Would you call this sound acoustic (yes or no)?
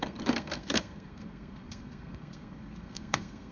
no